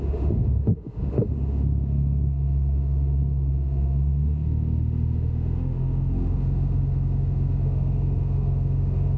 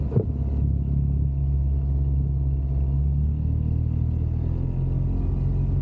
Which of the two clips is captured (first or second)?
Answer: second